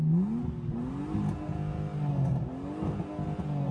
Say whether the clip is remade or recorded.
recorded